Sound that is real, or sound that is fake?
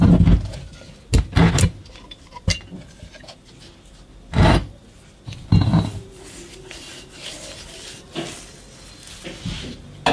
real